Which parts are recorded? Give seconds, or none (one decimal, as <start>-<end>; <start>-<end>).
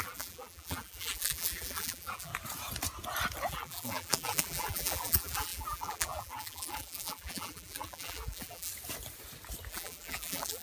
2.3-3.5; 8.7-9.7